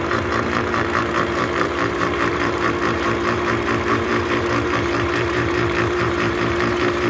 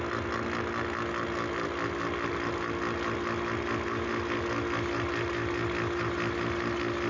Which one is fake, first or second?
first